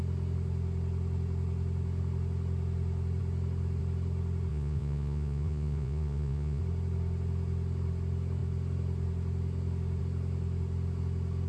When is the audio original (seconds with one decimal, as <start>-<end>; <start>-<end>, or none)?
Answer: 0.0-4.5; 6.6-11.5